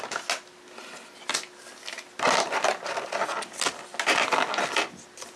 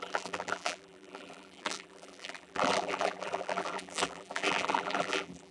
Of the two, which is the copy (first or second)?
second